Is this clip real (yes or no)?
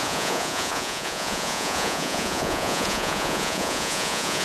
no